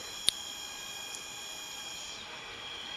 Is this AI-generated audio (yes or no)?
no